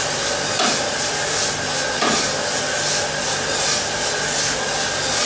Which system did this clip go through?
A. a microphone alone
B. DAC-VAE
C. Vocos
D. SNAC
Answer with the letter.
A